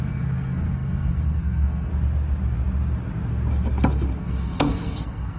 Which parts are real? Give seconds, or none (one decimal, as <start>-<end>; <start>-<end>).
1.9-4.2